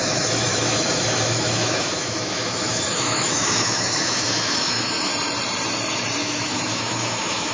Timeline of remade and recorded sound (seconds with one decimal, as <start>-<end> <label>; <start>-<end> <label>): 0.0-5.1 remade; 5.1-6.2 recorded; 6.2-7.5 remade